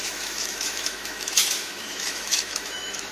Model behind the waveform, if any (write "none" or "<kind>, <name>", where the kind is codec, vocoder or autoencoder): autoencoder, DAC-VAE